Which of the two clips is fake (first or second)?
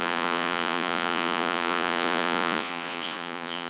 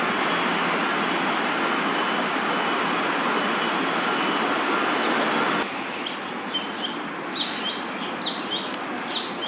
first